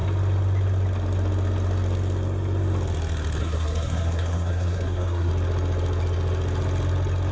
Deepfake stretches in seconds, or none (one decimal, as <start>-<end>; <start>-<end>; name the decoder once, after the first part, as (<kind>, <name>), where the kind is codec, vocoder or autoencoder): 3.4-5.3 (codec, SNAC)